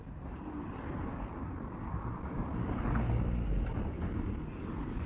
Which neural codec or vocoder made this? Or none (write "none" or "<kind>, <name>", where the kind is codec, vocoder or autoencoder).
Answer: none